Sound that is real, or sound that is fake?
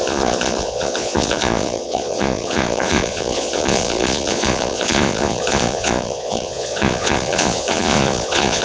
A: fake